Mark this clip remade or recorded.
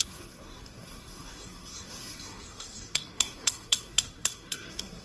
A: remade